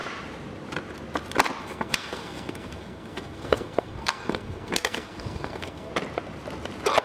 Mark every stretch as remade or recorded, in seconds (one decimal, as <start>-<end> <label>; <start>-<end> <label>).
0.0-1.6 recorded; 1.6-5.9 remade; 5.9-7.0 recorded